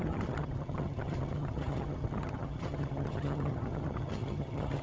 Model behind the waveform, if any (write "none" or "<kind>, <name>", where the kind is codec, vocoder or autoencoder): vocoder, HiFi-GAN